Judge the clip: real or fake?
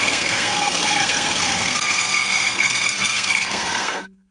fake